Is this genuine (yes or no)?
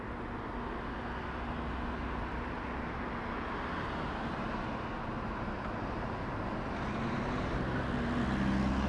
yes